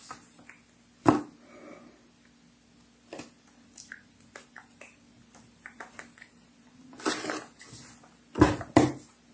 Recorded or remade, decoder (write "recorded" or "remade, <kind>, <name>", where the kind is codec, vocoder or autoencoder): recorded